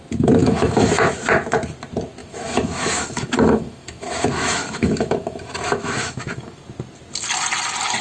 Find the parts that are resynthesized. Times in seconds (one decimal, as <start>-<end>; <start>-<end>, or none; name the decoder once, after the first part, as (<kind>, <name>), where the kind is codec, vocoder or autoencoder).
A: 0.4-0.9 (autoencoder, DAC-VAE); 2.2-6.6